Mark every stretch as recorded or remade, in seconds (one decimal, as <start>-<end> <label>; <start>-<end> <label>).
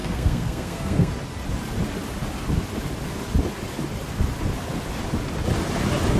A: 0.0-1.1 remade; 1.1-6.2 recorded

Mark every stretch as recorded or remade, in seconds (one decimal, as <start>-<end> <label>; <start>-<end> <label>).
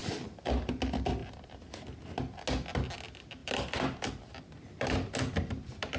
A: 0.0-0.7 remade; 0.7-3.4 recorded; 3.4-4.3 remade; 4.3-6.0 recorded